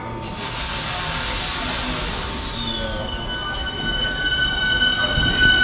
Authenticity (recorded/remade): recorded